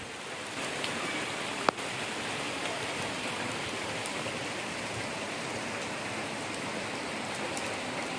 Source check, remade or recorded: recorded